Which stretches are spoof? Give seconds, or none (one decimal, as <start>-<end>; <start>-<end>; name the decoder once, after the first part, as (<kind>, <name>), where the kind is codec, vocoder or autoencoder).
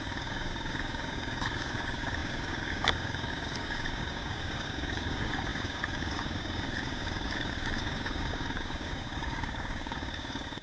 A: 0.0-10.6 (codec, DAC)